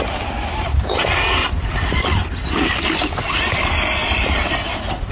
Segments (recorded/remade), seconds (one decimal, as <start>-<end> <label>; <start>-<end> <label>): 0.0-1.4 recorded; 1.4-4.5 remade; 4.5-5.1 recorded